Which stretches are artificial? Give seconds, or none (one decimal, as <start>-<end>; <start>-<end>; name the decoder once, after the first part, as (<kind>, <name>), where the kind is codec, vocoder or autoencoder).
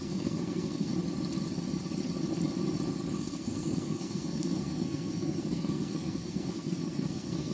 0.0-0.9 (codec, SNAC); 3.2-7.5